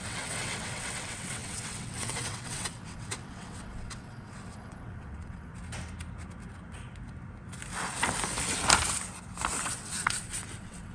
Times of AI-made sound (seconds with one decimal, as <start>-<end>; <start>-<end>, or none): 0.0-5.5; 9.6-10.9